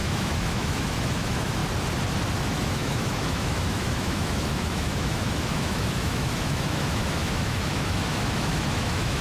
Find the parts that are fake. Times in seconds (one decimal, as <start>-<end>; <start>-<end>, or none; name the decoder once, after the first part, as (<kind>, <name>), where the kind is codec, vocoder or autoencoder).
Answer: 0.0-1.6 (autoencoder, DAC-VAE); 2.4-9.2